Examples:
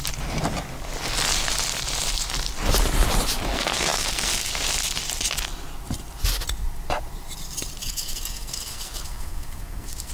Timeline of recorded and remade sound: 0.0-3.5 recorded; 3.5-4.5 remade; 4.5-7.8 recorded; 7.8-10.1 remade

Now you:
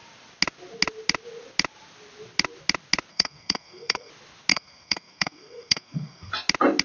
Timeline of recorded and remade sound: 0.0-3.1 recorded; 3.1-4.1 remade; 4.1-4.5 recorded; 4.5-6.3 remade; 6.3-6.8 recorded

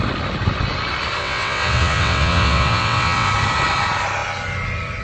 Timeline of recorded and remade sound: 0.0-1.2 recorded; 1.2-3.3 remade; 3.3-5.0 recorded

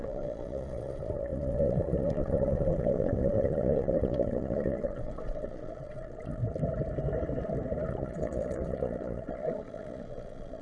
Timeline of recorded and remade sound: 0.0-6.4 remade; 6.4-7.9 recorded; 7.9-10.6 remade

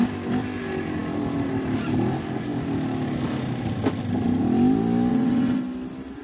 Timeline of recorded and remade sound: 0.0-5.1 recorded; 5.1-5.6 remade; 5.6-6.2 recorded

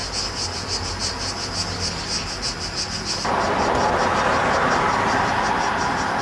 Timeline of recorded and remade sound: 0.0-6.2 recorded